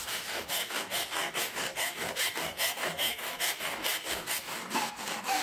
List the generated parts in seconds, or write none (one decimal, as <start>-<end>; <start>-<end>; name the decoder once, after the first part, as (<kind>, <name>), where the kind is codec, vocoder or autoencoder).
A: 0.0-5.4 (codec, DAC)